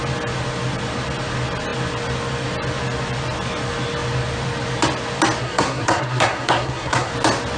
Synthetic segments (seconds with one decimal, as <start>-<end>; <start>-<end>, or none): 5.4-7.1